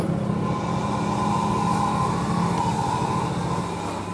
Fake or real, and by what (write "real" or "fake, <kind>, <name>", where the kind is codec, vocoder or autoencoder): real